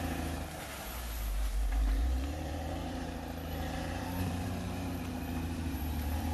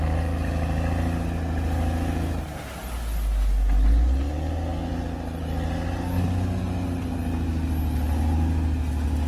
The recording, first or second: second